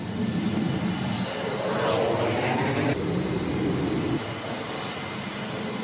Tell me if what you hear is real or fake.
real